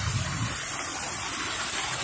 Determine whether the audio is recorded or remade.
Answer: recorded